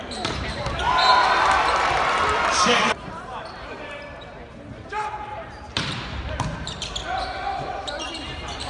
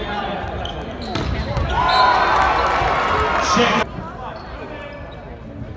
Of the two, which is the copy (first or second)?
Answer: first